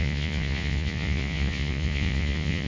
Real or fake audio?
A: fake